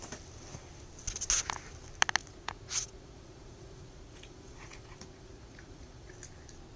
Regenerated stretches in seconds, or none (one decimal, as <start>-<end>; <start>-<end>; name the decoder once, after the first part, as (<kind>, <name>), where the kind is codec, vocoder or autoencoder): 2.2-6.1 (vocoder, Vocos)